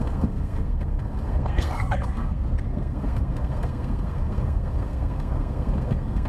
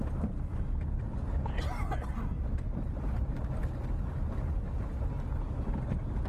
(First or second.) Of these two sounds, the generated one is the first